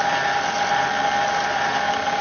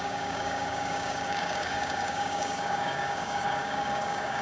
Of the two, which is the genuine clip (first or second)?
first